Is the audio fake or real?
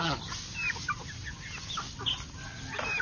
real